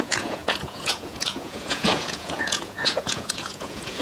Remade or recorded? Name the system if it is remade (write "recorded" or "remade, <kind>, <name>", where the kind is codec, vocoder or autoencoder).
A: remade, vocoder, Vocos